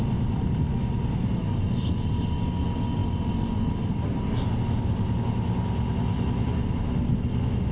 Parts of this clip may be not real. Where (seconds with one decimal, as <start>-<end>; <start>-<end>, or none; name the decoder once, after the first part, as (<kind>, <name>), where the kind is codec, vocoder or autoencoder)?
6.1-6.9 (vocoder, BigVGAN v2)